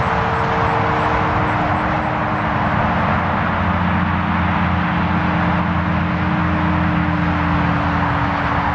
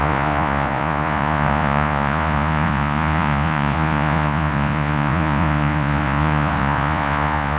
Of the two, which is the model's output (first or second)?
second